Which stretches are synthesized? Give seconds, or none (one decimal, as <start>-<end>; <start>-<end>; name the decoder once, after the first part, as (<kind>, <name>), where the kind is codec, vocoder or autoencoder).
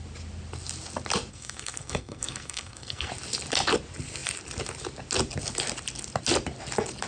1.3-3.1 (codec, SNAC)